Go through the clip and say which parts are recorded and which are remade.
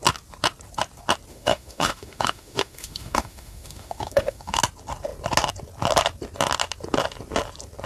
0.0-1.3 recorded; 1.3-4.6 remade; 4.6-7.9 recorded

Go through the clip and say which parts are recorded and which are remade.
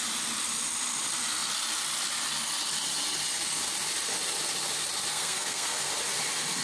0.0-5.1 recorded; 5.1-5.9 remade; 5.9-6.6 recorded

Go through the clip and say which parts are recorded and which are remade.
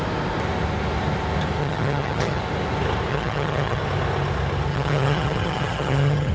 0.0-1.6 recorded; 1.6-2.4 remade; 2.4-3.1 recorded; 3.1-3.8 remade; 3.8-4.7 recorded; 4.7-6.3 remade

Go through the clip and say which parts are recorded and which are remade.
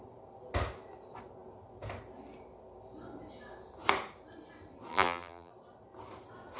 0.0-4.9 recorded; 4.9-5.5 remade; 5.5-6.6 recorded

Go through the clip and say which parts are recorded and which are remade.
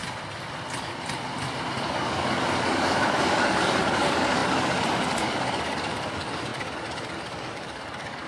0.0-1.9 recorded; 1.9-8.3 remade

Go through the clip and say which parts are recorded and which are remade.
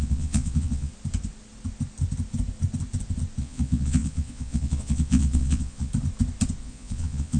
0.0-0.9 remade; 0.9-3.4 recorded; 3.4-5.9 remade; 5.9-6.6 recorded; 6.6-7.4 remade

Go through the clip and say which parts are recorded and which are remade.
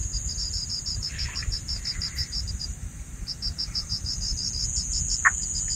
0.0-4.3 remade; 4.3-5.8 recorded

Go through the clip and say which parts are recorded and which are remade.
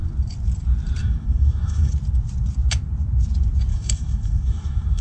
0.0-1.0 recorded; 1.0-1.9 remade; 1.9-3.7 recorded; 3.7-5.0 remade